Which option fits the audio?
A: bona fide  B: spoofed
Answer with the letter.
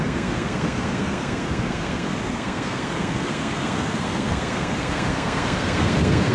B